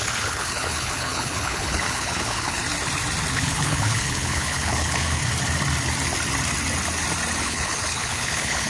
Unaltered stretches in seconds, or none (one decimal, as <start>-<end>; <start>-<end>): 2.6-3.3; 5.2-7.4